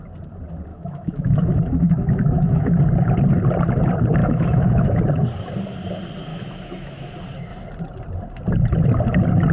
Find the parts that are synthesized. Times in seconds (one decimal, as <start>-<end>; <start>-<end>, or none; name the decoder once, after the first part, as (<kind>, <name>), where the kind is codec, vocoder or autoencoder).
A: 0.7-2.8 (autoencoder, DAC-VAE); 4.2-5.0; 6.3-7.1